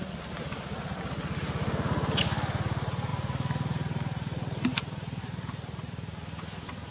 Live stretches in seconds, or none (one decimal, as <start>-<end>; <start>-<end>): 0.0-6.9